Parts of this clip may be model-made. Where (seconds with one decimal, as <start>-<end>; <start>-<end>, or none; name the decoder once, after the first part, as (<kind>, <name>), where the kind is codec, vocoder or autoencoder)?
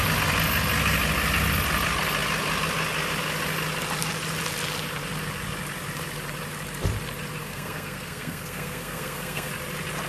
7.4-9.5 (codec, SNAC)